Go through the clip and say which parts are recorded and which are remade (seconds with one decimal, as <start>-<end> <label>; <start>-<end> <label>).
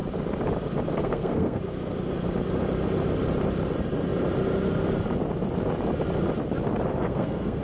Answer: 0.0-1.0 recorded; 1.0-1.6 remade; 1.6-6.9 recorded; 6.9-7.6 remade